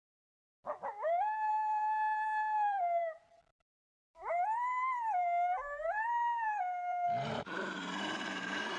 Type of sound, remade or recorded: remade